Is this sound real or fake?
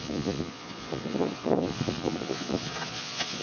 fake